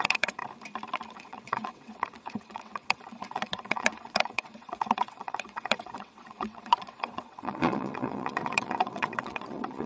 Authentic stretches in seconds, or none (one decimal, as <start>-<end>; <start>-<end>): 0.4-1.1